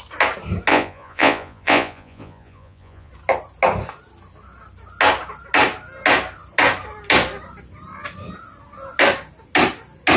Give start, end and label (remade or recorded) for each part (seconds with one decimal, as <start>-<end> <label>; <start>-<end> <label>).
0.0-0.7 recorded; 0.7-3.1 remade; 3.1-10.2 recorded